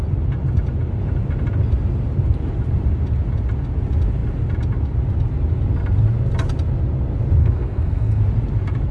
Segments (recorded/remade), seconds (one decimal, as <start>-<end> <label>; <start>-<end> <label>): 0.0-7.4 recorded; 7.4-8.2 remade; 8.2-8.9 recorded